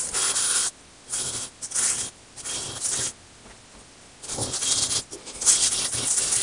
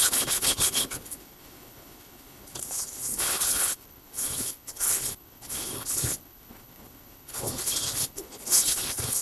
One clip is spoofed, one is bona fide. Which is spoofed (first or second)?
second